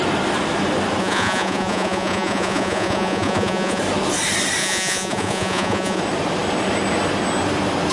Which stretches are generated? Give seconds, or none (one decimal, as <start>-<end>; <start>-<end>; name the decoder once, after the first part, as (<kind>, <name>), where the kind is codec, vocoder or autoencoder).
1.0-3.8 (vocoder, Vocos); 4.6-6.0